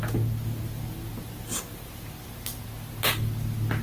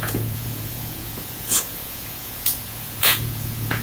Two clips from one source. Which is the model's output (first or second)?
second